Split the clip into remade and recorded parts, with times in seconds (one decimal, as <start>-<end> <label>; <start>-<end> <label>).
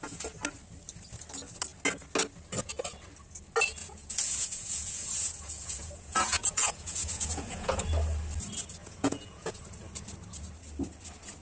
0.0-3.8 recorded; 3.8-7.8 remade; 7.8-8.8 recorded; 8.8-9.6 remade; 9.6-11.4 recorded